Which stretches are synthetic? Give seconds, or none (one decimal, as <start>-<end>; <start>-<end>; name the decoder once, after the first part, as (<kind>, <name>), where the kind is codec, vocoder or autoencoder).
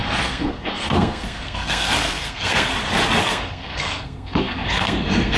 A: 0.0-2.7 (codec, SNAC); 3.2-5.4